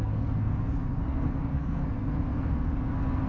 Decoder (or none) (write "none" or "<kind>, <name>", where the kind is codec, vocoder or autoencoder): codec, SNAC